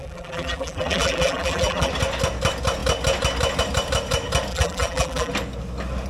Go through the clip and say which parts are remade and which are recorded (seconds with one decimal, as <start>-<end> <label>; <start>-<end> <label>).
0.0-1.9 remade; 1.9-4.5 recorded; 4.5-5.3 remade; 5.3-6.1 recorded